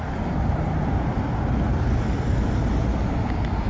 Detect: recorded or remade recorded